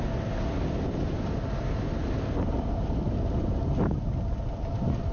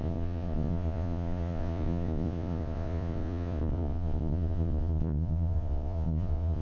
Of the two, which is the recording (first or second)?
first